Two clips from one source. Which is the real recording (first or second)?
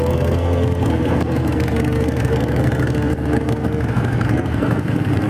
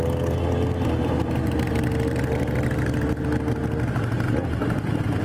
second